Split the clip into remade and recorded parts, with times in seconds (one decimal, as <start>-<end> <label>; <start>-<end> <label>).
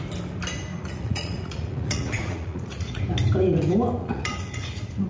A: 0.0-0.7 recorded; 0.7-3.0 remade; 3.0-4.0 recorded; 4.0-5.1 remade